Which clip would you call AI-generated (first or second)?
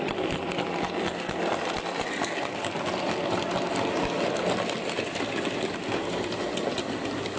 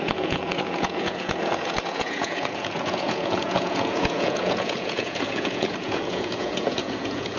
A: second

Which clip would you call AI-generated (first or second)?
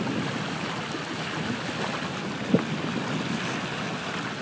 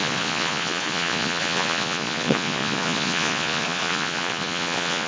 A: second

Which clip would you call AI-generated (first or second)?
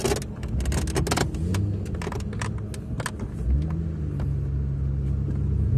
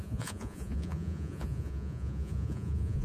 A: second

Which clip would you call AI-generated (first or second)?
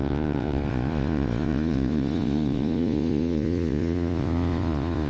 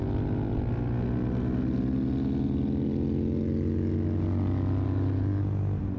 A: first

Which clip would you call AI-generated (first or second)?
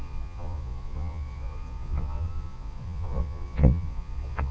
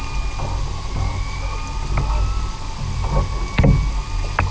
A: first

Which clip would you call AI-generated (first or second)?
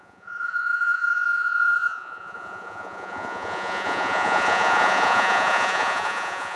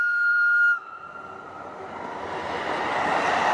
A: first